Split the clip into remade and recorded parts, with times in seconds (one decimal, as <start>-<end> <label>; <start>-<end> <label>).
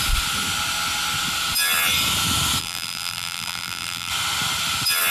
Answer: 0.0-2.6 recorded; 2.6-4.1 remade; 4.1-5.1 recorded